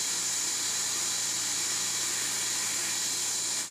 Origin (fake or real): real